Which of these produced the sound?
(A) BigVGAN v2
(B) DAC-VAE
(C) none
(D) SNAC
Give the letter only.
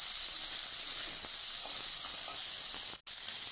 C